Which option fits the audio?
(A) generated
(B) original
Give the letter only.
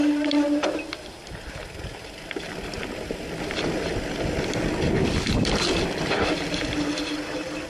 B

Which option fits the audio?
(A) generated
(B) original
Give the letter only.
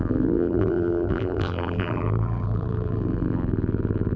A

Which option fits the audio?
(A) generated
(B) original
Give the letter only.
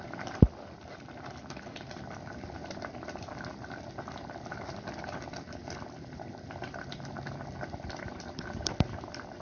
A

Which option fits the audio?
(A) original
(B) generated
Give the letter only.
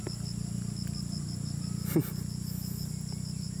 A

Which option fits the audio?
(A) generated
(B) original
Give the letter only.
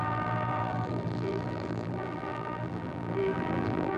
A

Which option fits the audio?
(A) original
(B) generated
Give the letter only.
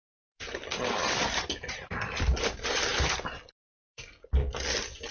B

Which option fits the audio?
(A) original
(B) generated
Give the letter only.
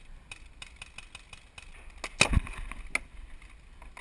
A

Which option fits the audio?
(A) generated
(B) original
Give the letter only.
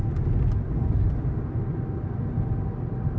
B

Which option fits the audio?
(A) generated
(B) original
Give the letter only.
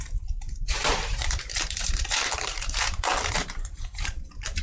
A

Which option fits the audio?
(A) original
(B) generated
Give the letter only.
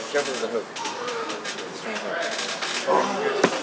A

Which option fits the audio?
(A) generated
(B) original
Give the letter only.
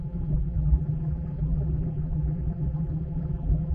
A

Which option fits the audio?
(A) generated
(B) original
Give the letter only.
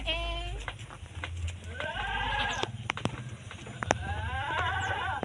B